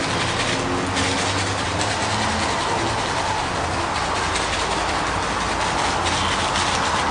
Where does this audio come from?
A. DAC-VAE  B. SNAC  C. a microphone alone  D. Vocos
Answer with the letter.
C